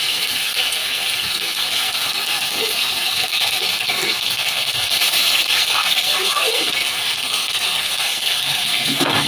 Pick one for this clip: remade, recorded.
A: remade